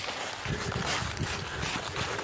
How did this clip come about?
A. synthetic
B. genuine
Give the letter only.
B